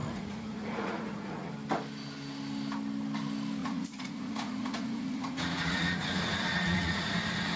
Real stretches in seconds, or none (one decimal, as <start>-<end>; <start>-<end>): 1.5-3.6; 7.1-7.6